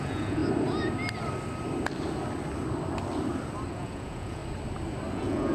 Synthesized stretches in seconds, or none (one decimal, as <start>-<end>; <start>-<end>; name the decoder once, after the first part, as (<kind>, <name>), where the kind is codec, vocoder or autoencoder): 0.0-0.4 (vocoder, Vocos); 3.7-4.4; 5.1-5.5